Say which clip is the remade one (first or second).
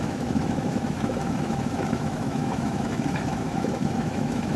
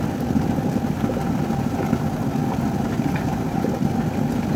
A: first